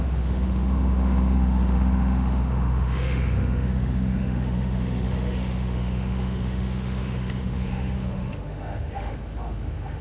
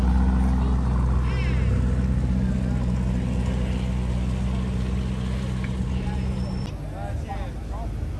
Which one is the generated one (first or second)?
first